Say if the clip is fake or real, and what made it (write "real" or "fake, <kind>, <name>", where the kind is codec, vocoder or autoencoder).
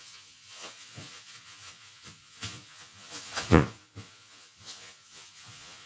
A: fake, vocoder, Vocos